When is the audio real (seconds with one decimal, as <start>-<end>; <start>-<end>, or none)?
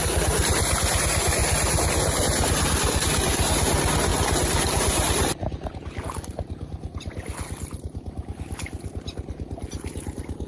0.0-10.5